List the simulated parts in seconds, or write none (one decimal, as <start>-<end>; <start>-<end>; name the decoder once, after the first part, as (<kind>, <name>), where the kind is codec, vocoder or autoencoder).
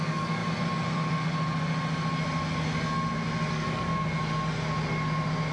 0.0-0.4 (codec, DAC); 3.5-3.9